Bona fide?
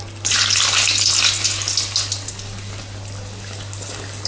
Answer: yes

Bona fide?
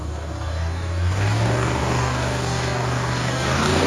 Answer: no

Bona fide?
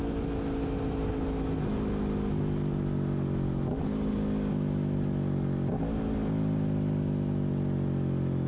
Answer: yes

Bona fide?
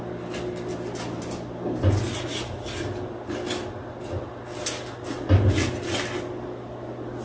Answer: yes